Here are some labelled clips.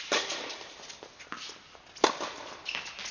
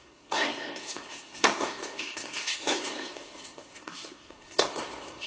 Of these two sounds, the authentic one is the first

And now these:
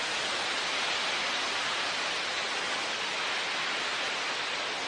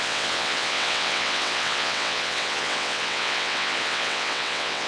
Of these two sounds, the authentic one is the first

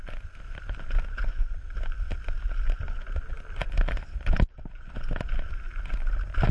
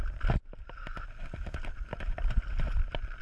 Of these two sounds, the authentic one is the first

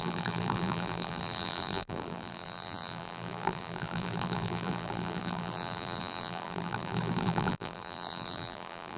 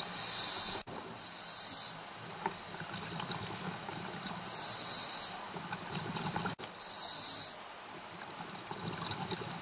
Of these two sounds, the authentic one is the second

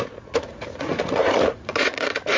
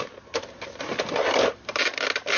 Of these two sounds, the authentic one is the second